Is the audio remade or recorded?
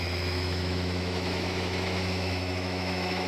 remade